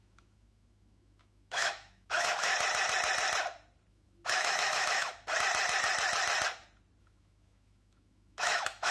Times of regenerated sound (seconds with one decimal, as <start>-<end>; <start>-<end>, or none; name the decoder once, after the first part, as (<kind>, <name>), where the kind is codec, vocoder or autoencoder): 0.0-2.5 (autoencoder, DAC-VAE); 3.9-5.1; 7.0-8.9